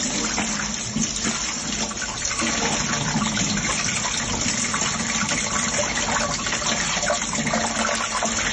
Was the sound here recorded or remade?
recorded